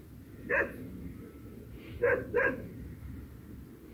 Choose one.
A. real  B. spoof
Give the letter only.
A